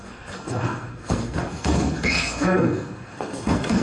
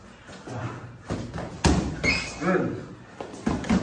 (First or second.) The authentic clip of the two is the second